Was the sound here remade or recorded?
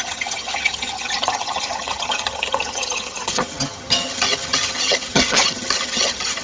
remade